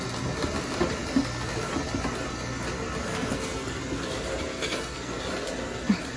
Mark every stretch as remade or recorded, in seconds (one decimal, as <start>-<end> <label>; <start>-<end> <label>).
0.0-3.0 recorded; 3.0-3.8 remade; 3.8-4.5 recorded; 4.5-5.2 remade; 5.2-6.2 recorded

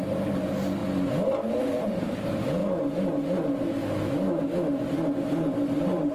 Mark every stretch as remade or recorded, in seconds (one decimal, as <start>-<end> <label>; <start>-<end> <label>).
0.0-0.8 remade; 0.8-1.8 recorded; 1.8-2.6 remade; 2.6-5.5 recorded; 5.5-6.1 remade